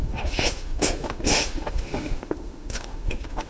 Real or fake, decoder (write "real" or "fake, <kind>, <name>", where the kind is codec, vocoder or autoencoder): fake, autoencoder, DAC-VAE